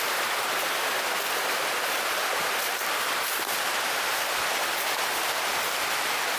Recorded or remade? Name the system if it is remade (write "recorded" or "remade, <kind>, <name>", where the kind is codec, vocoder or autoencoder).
remade, vocoder, BigVGAN v2